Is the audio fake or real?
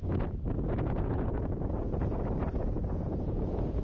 fake